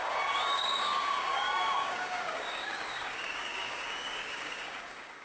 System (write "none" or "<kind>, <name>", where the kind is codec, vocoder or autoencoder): codec, DAC